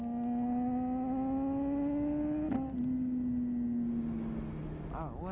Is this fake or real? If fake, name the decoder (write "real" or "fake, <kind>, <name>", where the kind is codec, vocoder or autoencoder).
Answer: real